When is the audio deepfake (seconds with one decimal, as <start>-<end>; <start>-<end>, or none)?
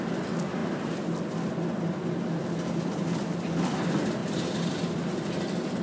none